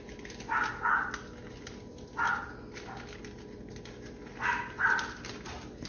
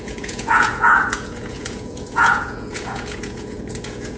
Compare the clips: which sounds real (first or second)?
first